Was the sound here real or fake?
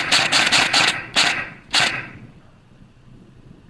fake